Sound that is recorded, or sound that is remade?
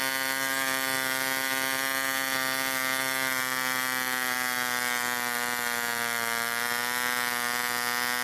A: recorded